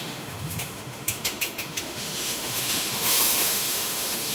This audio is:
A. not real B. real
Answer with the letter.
A